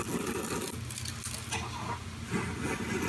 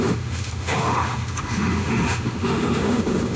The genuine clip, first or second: first